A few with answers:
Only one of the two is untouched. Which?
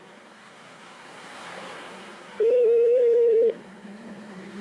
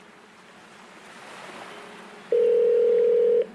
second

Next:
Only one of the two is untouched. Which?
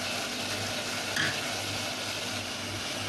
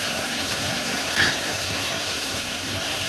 first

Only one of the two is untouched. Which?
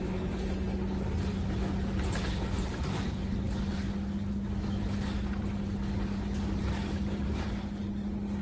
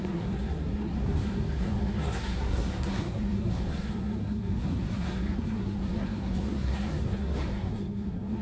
first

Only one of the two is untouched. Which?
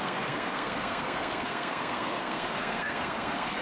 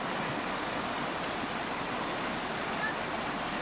second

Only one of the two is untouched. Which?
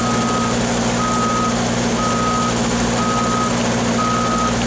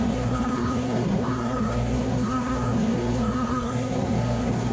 first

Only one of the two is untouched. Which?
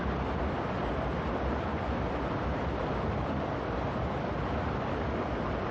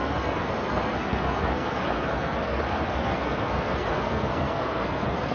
first